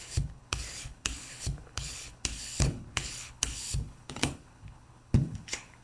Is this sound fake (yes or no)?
yes